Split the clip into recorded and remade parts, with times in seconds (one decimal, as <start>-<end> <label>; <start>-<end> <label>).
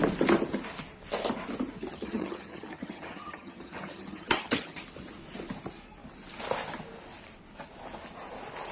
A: 0.0-1.9 recorded; 1.9-4.8 remade; 4.8-8.7 recorded